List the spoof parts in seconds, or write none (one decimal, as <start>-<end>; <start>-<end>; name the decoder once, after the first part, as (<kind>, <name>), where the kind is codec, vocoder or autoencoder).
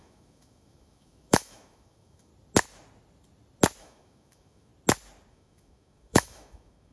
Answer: 0.0-2.3 (autoencoder, DAC-VAE); 3.8-4.7; 5.3-6.9